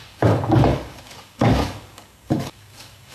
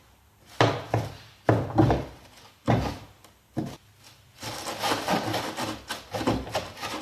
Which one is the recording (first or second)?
second